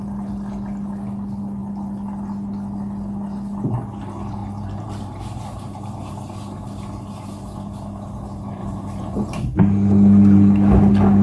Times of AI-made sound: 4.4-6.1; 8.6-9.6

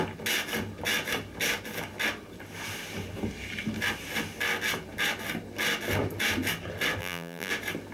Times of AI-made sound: 7.0-7.5

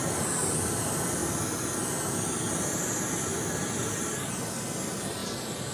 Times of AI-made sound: none

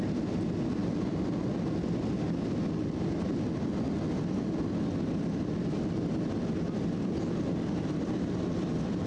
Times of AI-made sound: none